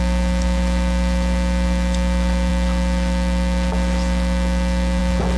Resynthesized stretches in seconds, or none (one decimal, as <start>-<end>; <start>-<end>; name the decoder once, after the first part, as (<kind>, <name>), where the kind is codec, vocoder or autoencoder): none